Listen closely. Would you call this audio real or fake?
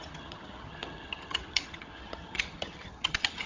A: fake